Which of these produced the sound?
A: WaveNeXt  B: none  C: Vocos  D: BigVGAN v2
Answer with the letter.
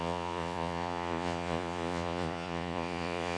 C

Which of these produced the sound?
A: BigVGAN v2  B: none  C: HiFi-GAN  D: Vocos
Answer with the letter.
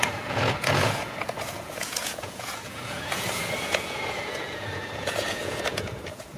D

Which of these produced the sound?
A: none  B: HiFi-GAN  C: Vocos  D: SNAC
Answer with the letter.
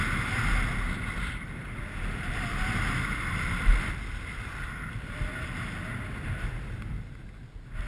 A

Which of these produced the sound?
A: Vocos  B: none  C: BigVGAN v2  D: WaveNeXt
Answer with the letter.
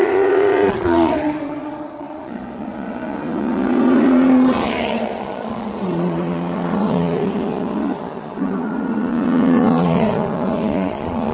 A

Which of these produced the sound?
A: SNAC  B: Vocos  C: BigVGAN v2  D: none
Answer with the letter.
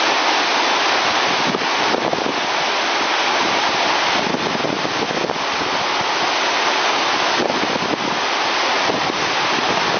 D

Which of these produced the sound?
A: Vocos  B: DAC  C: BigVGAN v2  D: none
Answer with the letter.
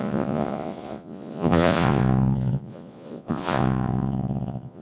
A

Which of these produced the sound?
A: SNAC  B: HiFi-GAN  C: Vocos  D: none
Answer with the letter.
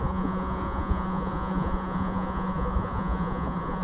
C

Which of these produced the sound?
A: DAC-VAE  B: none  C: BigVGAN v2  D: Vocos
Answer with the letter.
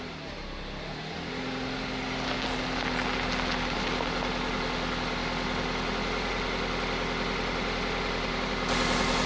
B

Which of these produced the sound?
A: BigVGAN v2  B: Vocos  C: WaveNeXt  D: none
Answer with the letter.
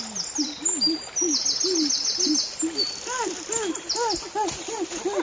D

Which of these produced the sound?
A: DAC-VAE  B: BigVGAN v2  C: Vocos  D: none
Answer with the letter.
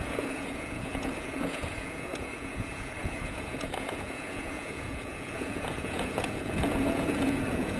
C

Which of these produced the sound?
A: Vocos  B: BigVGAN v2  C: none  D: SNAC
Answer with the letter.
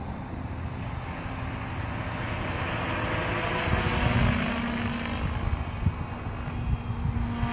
C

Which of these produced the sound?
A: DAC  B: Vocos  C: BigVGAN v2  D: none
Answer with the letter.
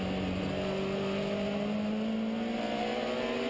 D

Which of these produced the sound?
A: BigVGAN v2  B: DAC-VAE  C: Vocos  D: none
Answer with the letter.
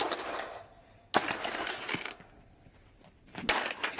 D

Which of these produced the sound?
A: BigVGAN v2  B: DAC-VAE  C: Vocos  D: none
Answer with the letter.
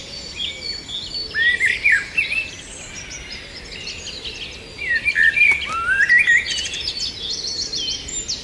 D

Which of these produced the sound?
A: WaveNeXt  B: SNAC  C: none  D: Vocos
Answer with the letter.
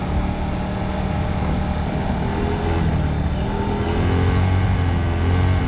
C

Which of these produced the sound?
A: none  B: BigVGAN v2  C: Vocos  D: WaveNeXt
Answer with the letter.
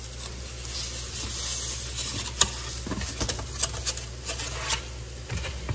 A